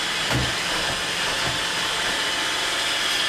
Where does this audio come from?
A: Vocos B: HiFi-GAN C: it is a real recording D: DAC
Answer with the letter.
C